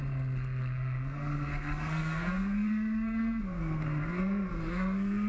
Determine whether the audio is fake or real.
fake